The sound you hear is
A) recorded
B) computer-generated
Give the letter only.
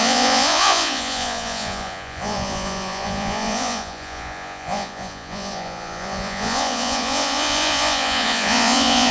B